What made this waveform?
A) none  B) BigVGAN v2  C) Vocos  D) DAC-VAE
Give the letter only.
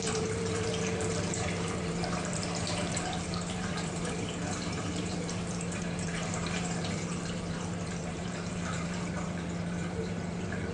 B